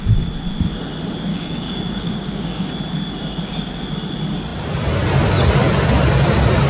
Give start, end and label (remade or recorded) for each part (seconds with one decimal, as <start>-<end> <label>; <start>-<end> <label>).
0.0-1.3 recorded; 1.3-2.7 remade; 2.7-6.7 recorded